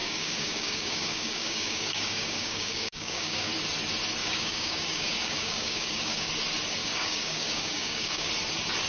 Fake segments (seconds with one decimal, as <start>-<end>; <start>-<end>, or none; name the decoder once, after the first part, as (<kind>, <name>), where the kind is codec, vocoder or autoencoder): 0.0-3.5 (codec, DAC); 4.2-6.3; 6.8-8.3